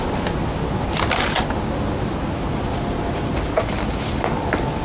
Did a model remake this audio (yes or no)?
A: no